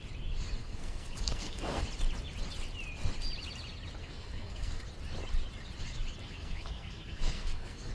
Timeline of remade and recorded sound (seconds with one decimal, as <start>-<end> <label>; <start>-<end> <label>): 0.0-0.6 recorded; 0.6-1.8 remade; 1.8-4.0 recorded; 4.0-4.8 remade; 4.8-6.2 recorded; 6.2-7.9 remade